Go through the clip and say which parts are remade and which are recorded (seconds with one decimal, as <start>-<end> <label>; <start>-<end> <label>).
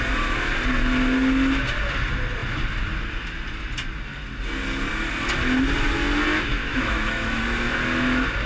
0.0-6.7 recorded; 6.7-7.4 remade; 7.4-8.5 recorded